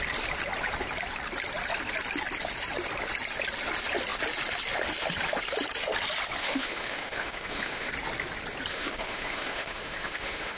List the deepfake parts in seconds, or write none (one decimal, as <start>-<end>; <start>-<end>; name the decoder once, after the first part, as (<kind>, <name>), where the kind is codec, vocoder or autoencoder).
6.4-7.9 (autoencoder, DAC-VAE); 8.7-10.6